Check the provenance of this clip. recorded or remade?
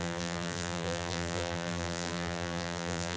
remade